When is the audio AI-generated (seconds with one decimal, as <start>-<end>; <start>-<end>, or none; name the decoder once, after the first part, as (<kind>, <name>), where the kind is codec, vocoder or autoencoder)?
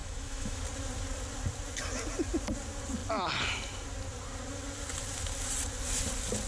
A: 0.0-0.6 (autoencoder, DAC-VAE)